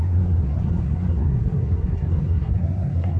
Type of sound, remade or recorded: remade